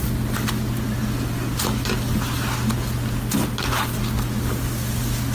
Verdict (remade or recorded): recorded